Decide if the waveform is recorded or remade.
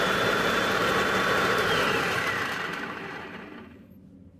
remade